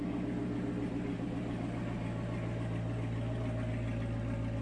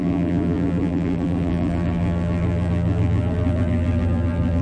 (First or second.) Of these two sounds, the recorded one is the first